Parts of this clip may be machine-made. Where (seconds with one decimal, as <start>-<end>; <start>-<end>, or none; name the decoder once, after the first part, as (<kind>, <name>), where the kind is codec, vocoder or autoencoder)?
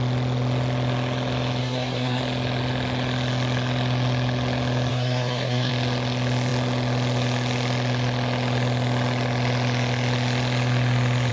1.6-2.2 (codec, SNAC); 4.9-5.7